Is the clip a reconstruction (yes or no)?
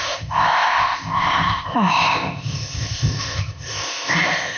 yes